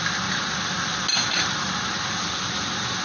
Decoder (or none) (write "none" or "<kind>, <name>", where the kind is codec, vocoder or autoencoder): none